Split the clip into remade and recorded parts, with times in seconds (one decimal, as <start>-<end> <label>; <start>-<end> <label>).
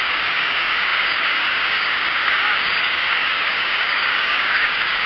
0.0-5.1 remade